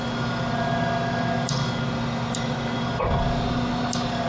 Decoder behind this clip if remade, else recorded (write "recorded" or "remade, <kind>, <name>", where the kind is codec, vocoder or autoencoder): recorded